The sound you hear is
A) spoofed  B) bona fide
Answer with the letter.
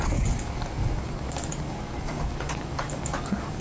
A